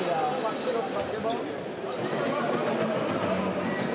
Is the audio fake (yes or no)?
no